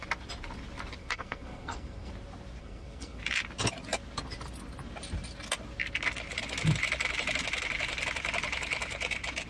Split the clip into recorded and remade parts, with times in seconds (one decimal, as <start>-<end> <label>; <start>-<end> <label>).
0.0-1.0 recorded; 1.0-2.1 remade; 2.1-2.6 recorded; 2.6-3.2 remade; 3.2-9.5 recorded